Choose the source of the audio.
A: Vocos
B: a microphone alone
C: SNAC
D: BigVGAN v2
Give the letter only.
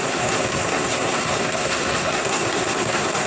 C